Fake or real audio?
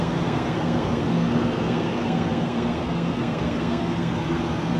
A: fake